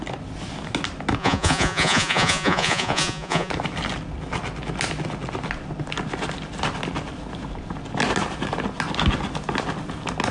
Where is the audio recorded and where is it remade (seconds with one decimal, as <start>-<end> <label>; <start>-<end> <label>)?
0.0-1.2 recorded; 1.2-3.5 remade; 3.5-10.3 recorded